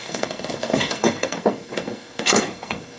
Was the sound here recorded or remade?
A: remade